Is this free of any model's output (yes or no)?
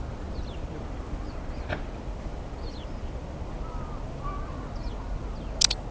yes